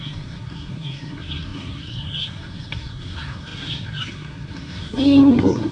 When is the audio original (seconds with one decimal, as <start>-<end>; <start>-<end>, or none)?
none